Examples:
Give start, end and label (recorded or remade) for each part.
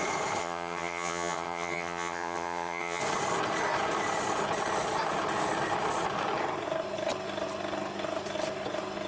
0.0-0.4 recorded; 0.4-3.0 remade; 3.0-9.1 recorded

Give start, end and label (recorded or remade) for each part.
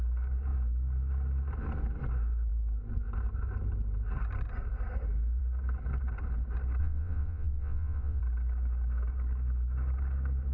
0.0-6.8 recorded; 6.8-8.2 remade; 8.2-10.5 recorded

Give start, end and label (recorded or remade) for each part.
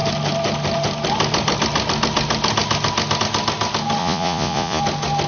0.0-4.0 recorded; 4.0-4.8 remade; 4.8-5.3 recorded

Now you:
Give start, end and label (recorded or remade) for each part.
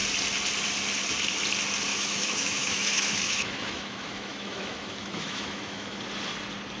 0.0-1.9 recorded; 1.9-6.0 remade; 6.0-6.8 recorded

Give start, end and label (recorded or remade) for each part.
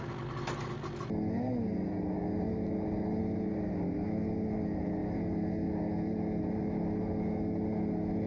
0.0-8.3 recorded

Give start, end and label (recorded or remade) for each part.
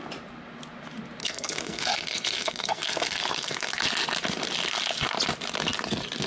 0.0-1.2 recorded; 1.2-3.7 remade; 3.7-6.3 recorded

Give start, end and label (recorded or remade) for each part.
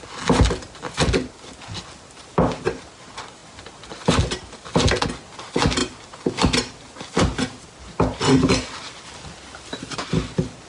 0.0-10.7 recorded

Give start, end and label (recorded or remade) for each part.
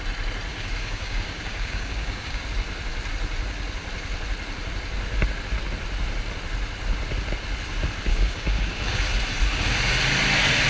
0.0-0.5 recorded; 0.5-2.4 remade; 2.4-8.1 recorded; 8.1-9.1 remade; 9.1-10.7 recorded